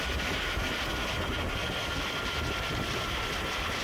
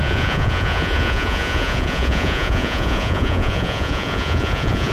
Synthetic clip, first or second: second